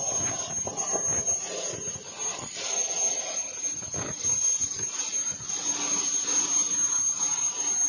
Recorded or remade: recorded